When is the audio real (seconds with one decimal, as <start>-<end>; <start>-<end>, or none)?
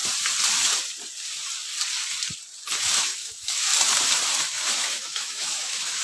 0.0-2.7; 3.7-4.4